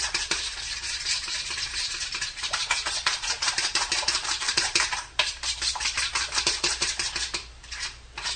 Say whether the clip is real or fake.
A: fake